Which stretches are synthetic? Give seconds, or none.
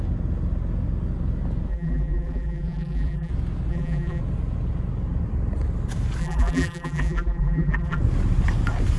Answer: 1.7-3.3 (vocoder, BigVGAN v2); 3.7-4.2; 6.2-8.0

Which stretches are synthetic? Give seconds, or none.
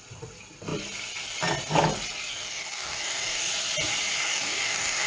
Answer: 2.3-3.5 (codec, DAC); 4.2-5.1